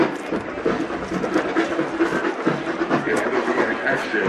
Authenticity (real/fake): real